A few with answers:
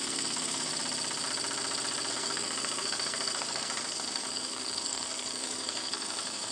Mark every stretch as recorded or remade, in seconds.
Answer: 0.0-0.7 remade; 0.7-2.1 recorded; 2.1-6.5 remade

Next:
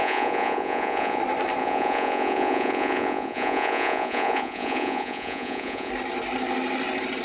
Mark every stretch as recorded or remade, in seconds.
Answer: 0.0-1.2 remade; 1.2-1.6 recorded; 1.6-5.9 remade; 5.9-7.2 recorded